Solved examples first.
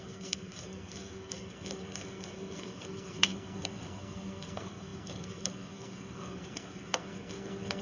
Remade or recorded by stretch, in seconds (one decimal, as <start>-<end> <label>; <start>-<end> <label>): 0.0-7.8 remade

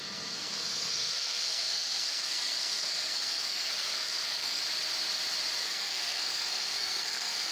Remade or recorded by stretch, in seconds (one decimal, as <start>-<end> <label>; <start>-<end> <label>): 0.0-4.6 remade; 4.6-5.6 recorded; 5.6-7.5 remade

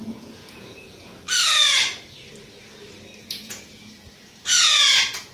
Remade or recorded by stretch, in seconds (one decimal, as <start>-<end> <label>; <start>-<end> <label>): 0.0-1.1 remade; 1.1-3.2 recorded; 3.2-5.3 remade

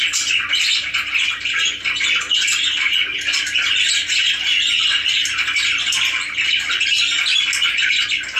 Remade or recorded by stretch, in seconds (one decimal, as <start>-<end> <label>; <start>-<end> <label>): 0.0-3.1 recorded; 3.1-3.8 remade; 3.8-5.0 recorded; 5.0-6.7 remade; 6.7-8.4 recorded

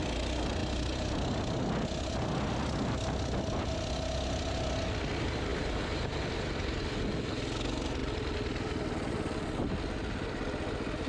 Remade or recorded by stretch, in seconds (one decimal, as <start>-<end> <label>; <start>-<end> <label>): 0.0-5.5 recorded; 5.5-6.4 remade; 6.4-11.1 recorded

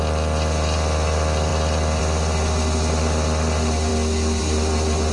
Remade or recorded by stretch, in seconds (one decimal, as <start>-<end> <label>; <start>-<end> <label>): 0.0-5.1 recorded